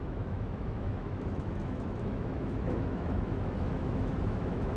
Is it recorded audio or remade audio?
remade